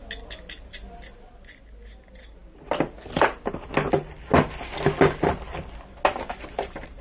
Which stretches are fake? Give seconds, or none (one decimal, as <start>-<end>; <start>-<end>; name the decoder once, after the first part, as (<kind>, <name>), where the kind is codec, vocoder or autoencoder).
none